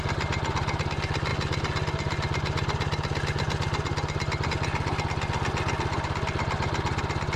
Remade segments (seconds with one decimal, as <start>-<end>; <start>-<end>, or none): none